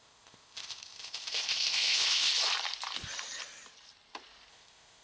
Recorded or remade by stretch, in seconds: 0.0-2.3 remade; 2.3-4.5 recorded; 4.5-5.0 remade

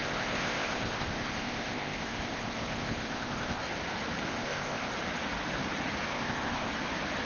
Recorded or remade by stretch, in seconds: 0.0-3.6 remade; 3.6-4.3 recorded; 4.3-4.9 remade; 4.9-6.1 recorded; 6.1-6.7 remade; 6.7-7.3 recorded